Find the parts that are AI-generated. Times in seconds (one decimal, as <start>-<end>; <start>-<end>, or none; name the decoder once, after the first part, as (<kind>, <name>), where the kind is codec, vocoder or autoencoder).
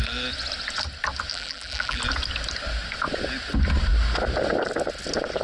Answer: 1.3-2.0 (vocoder, BigVGAN v2)